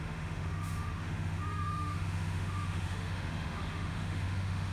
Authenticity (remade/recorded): remade